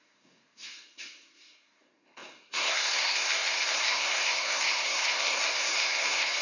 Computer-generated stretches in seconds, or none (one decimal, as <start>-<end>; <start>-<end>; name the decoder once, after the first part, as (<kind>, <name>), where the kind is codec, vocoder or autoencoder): 0.0-6.4 (codec, SNAC)